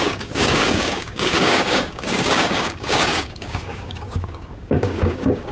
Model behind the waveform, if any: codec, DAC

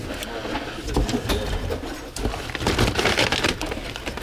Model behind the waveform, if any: none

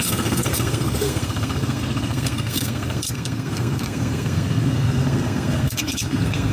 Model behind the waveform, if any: codec, SNAC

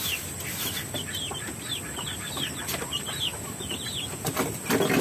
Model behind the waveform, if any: none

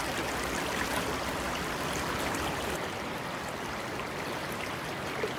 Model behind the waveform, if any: none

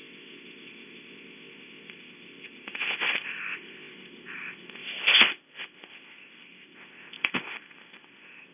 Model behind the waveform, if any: codec, ZipCodec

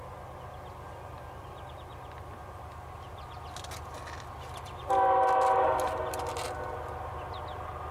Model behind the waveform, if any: none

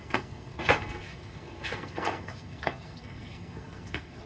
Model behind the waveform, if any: codec, SNAC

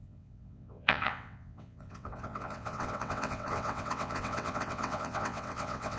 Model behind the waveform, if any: vocoder, WaveNeXt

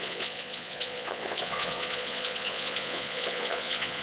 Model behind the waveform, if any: vocoder, Vocos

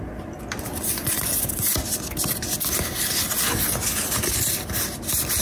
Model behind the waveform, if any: none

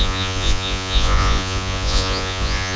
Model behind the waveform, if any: vocoder, Vocos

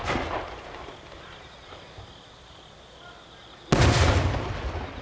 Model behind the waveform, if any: none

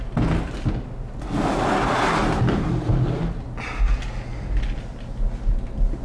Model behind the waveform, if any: none